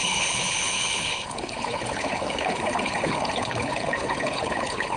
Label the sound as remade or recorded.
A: remade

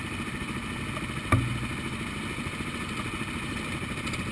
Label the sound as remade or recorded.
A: recorded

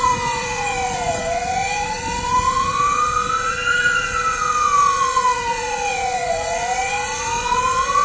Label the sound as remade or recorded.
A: remade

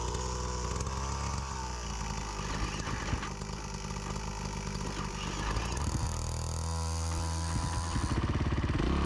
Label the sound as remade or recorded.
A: recorded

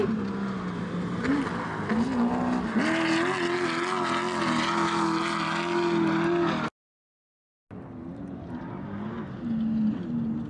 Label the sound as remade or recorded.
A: recorded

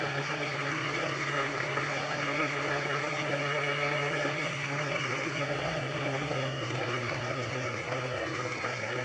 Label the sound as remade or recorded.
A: remade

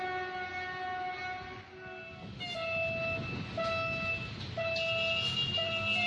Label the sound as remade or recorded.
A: recorded